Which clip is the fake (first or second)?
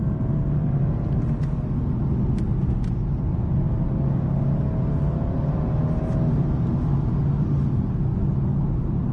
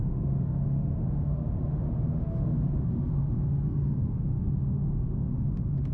second